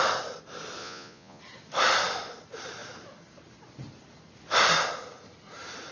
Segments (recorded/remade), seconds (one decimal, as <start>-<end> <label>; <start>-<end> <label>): 0.0-0.8 recorded; 0.8-1.4 remade; 1.4-5.9 recorded